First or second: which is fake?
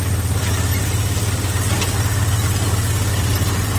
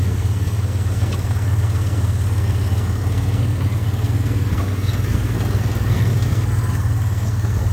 second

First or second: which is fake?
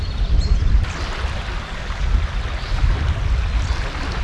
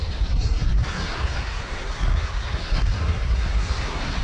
second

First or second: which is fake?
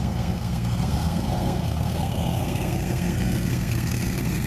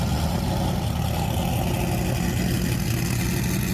first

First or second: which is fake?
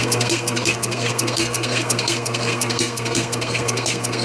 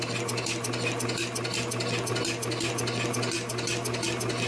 first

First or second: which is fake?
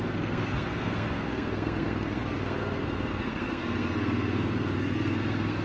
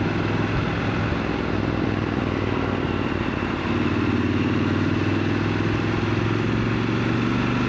first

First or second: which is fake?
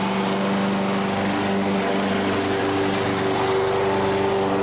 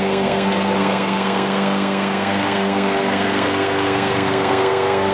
second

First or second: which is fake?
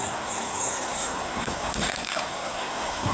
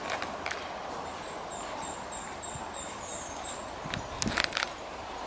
first